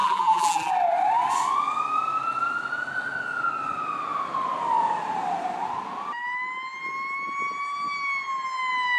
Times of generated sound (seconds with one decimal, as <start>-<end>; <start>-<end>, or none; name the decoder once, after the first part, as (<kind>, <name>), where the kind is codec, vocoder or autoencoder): 0.0-0.7 (vocoder, BigVGAN v2)